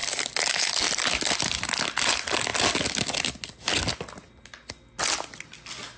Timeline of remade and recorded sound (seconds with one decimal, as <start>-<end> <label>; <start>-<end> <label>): 0.0-6.0 recorded